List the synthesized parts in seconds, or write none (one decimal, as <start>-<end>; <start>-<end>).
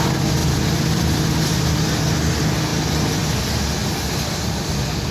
0.4-1.8; 3.8-4.4